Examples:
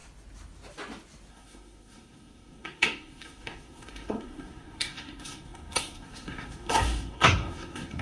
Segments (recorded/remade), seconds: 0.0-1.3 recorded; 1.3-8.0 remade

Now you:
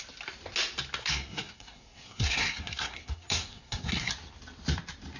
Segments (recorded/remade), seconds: 0.0-1.0 recorded; 1.0-4.1 remade; 4.1-5.2 recorded

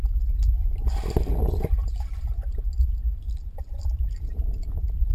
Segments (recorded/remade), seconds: 0.0-1.8 recorded; 1.8-5.1 remade